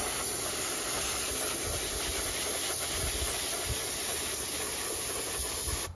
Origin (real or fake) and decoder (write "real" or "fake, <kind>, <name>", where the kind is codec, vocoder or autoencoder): real